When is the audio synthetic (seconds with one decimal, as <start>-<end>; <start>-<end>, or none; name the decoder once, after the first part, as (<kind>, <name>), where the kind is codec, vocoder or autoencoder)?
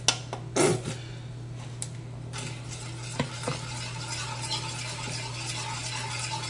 none